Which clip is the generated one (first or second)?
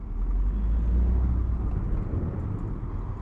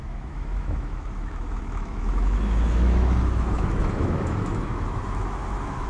second